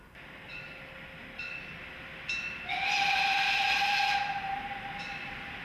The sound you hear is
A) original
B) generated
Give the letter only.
A